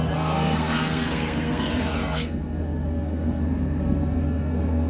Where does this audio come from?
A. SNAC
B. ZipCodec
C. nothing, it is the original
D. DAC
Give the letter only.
A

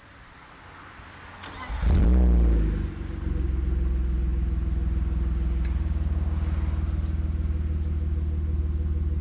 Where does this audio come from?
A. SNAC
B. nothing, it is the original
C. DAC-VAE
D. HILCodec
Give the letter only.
B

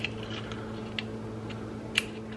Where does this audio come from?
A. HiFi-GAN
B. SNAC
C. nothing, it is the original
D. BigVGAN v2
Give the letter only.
C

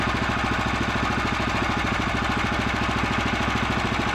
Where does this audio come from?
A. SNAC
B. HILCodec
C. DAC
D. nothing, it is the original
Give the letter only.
D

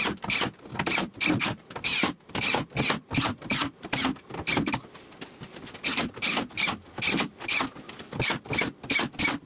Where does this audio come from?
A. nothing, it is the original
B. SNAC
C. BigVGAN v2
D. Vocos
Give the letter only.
A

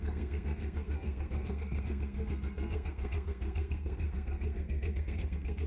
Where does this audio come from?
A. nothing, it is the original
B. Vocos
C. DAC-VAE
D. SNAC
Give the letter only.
D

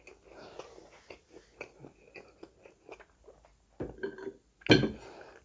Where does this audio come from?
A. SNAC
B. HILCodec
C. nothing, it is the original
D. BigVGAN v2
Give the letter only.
C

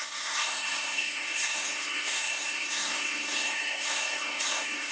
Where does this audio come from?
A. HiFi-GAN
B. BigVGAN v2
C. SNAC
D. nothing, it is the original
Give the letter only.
C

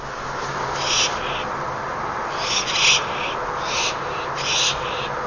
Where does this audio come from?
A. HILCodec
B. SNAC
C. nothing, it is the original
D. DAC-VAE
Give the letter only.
C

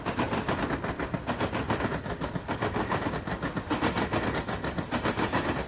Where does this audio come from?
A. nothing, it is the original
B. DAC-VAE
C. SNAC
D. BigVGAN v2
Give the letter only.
A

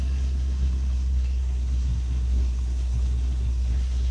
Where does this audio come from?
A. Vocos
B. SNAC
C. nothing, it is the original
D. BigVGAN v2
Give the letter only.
B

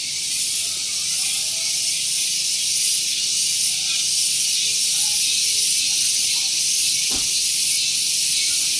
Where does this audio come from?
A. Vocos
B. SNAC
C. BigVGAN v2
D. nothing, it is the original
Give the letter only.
D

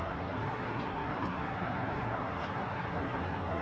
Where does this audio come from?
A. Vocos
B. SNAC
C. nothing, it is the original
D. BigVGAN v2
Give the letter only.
B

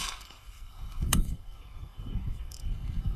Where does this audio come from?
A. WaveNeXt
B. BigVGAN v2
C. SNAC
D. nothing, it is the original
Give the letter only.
C